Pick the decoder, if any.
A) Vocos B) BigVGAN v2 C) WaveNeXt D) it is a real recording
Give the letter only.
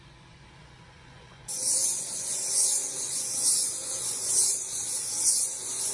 A